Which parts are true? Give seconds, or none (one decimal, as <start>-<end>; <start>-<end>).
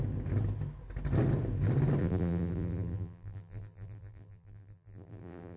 0.0-2.0